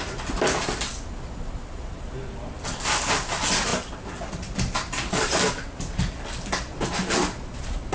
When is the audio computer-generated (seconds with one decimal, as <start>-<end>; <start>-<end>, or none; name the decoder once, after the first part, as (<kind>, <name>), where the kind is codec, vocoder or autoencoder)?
none